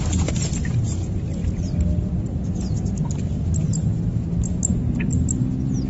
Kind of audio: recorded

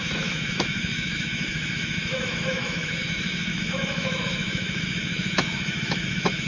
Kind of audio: remade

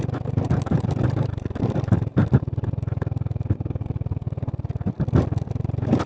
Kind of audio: recorded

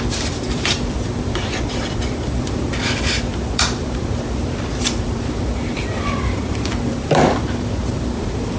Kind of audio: remade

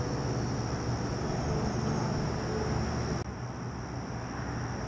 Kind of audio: recorded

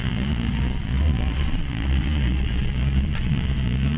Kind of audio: remade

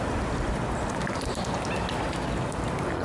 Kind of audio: recorded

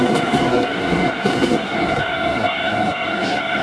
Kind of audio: remade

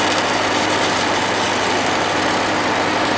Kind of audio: recorded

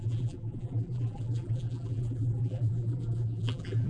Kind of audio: remade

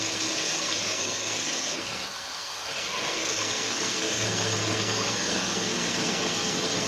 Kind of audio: remade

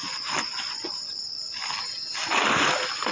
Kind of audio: recorded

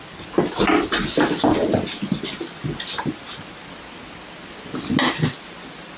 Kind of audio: recorded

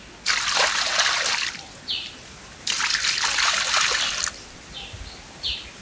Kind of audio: recorded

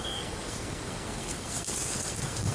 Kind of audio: remade